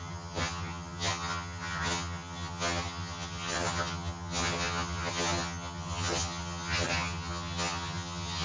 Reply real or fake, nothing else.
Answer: fake